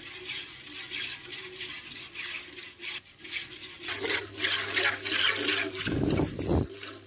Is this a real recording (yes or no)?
yes